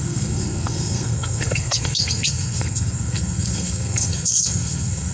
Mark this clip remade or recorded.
remade